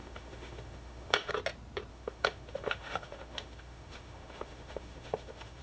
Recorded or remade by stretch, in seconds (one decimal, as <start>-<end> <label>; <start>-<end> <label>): 0.0-1.3 remade; 1.3-1.9 recorded; 1.9-5.6 remade